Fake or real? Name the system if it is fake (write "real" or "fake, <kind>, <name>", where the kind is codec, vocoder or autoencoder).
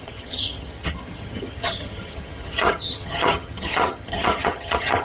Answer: fake, vocoder, HiFi-GAN